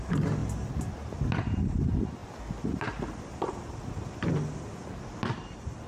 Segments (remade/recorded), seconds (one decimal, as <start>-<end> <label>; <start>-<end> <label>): 0.0-5.9 recorded

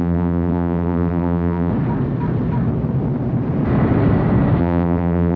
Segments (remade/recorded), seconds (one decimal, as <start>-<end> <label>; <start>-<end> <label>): 0.0-1.7 remade; 1.7-4.6 recorded; 4.6-5.4 remade